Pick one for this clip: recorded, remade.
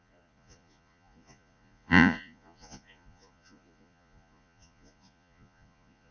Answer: remade